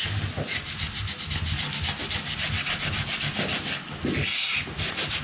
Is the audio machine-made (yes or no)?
no